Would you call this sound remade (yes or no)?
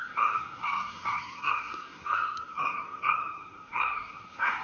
yes